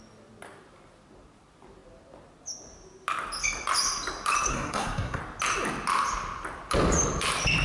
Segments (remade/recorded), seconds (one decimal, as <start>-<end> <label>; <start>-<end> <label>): 0.0-4.5 recorded; 4.5-5.2 remade; 5.2-7.6 recorded